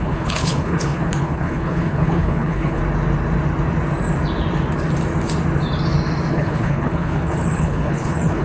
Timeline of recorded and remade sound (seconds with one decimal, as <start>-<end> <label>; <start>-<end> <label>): 0.0-2.8 remade; 2.8-6.3 recorded; 6.3-8.4 remade